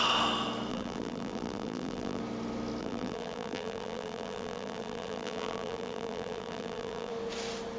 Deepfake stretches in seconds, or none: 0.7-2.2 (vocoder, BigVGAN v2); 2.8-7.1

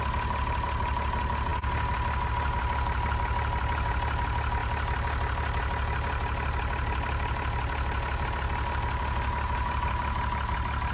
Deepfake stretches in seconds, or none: none

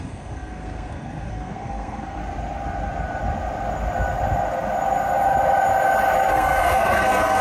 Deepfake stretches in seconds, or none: 0.0-2.2 (codec, SNAC); 6.3-7.4